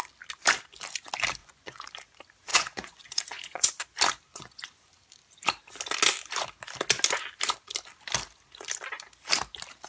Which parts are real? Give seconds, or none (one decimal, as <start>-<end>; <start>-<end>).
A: 0.0-1.4; 1.9-2.5; 3.7-4.3; 4.9-9.9